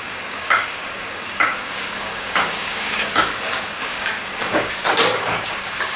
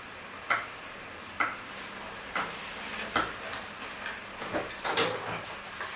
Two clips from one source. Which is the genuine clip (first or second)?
second